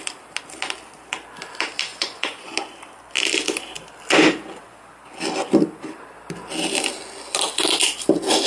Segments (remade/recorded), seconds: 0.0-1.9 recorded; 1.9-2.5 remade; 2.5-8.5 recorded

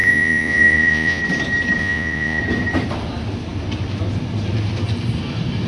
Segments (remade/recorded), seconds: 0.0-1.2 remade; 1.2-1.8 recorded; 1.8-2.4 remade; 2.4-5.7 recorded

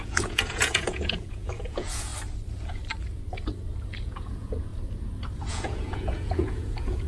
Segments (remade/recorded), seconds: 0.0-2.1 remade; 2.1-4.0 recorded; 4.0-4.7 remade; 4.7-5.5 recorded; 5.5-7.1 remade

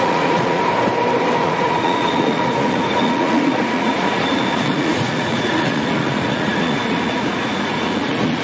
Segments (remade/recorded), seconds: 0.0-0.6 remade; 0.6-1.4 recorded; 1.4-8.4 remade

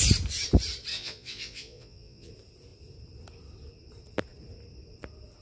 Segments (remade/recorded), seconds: 0.0-0.9 recorded; 0.9-2.3 remade; 2.3-5.4 recorded

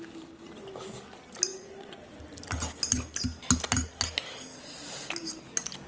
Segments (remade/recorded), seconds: 0.0-1.5 recorded; 1.5-2.1 remade; 2.1-5.9 recorded

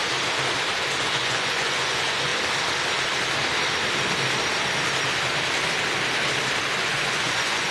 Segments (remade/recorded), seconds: 0.0-1.0 recorded; 1.0-2.3 remade; 2.3-6.8 recorded; 6.8-7.7 remade

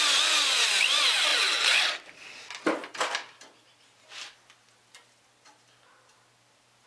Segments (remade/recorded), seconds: 0.0-6.9 recorded